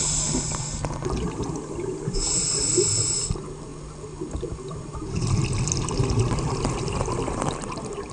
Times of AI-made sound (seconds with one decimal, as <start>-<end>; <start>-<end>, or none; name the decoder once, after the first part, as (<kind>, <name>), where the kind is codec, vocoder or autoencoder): none